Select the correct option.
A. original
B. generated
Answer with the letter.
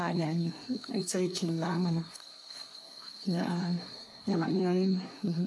B